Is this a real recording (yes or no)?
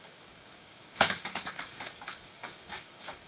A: no